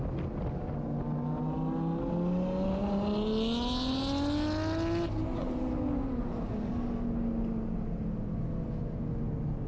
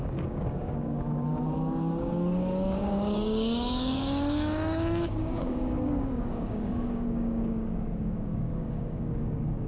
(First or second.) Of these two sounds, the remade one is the second